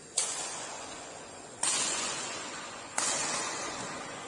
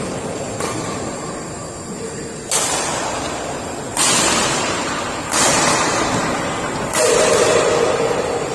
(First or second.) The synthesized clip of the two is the first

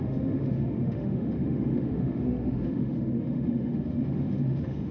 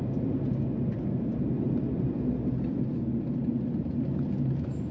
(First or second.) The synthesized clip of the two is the first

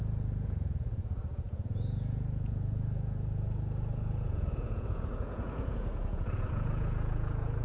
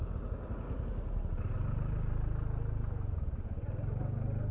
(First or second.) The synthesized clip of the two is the first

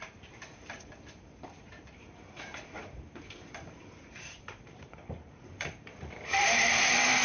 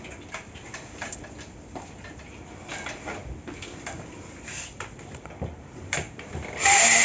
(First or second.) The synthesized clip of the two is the first